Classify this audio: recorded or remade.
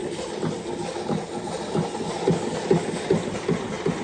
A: recorded